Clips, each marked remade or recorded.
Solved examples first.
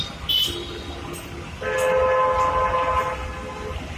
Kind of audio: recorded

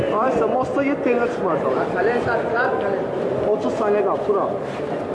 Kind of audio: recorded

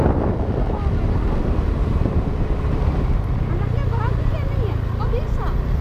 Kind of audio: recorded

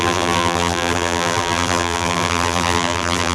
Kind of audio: remade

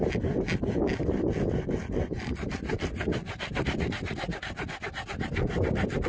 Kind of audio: recorded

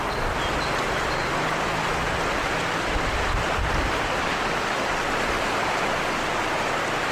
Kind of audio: recorded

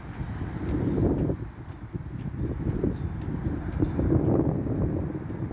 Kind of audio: recorded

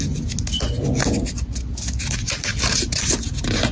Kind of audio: recorded